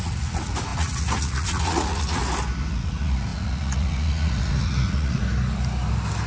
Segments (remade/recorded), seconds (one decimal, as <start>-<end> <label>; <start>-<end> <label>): 0.0-2.2 remade; 2.2-2.7 recorded; 2.7-5.2 remade; 5.2-6.3 recorded